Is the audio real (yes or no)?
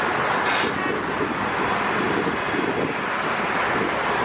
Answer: yes